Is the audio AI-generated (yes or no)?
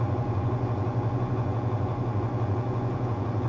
yes